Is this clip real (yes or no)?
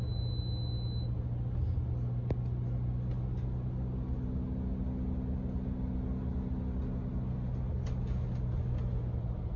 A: yes